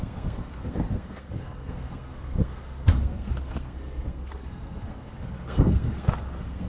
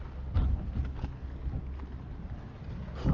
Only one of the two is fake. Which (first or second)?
first